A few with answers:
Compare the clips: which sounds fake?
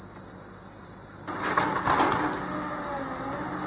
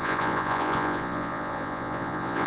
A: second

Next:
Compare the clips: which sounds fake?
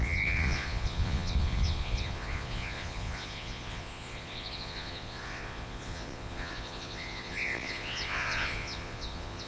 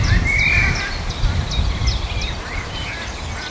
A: first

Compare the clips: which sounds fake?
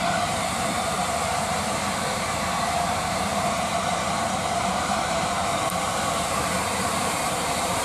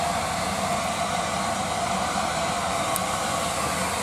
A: first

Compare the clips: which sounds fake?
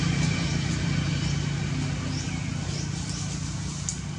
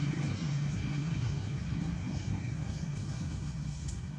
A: second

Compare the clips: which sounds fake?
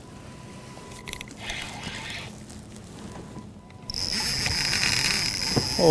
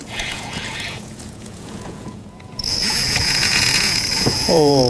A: second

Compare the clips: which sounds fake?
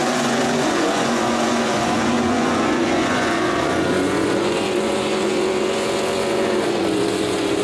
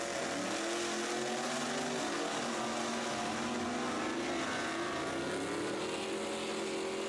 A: first